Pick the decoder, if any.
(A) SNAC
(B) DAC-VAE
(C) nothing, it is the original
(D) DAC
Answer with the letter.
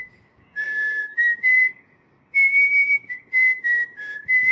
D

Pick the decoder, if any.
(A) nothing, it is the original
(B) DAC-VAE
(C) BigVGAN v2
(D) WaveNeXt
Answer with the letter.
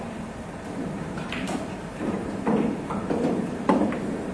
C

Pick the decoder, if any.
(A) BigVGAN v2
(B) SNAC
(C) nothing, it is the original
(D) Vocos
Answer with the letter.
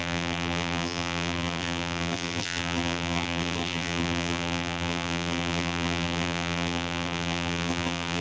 A